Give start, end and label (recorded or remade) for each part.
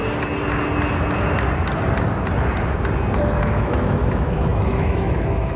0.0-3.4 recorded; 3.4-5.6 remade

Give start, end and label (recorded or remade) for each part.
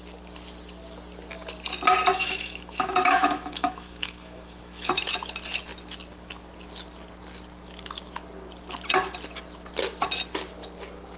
0.0-2.1 recorded; 2.1-4.9 remade; 4.9-11.2 recorded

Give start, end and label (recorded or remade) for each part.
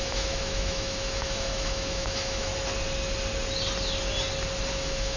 0.0-2.5 remade; 2.5-4.7 recorded; 4.7-5.2 remade